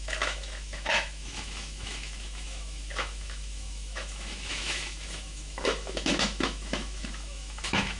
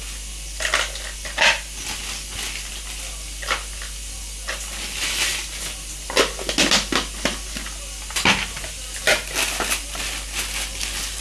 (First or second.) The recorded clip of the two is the second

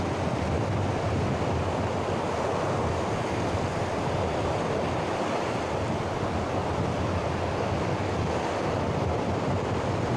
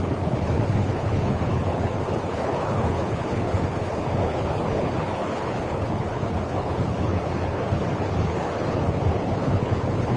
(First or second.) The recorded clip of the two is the first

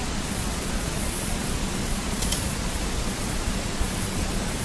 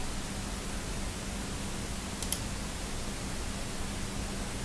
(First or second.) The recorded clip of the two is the second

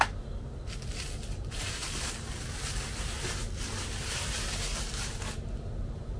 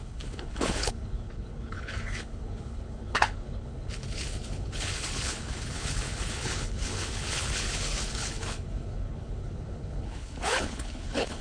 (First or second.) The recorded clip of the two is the first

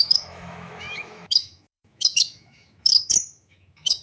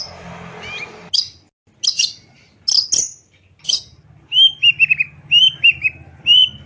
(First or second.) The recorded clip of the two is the second